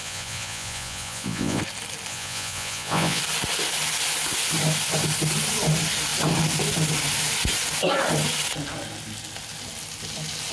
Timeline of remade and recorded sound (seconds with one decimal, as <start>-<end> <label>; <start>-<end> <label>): 0.0-1.6 remade; 1.6-2.1 recorded; 2.1-3.2 remade; 3.2-10.5 recorded